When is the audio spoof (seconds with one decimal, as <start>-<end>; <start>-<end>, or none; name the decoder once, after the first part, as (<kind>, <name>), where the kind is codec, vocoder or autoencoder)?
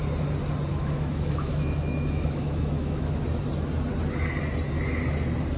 0.7-3.2 (autoencoder, DAC-VAE)